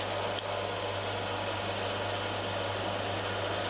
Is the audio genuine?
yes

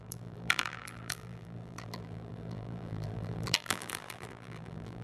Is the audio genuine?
no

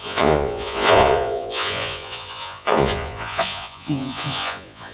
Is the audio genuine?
no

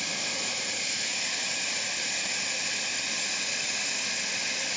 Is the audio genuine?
no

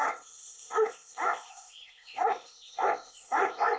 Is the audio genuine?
no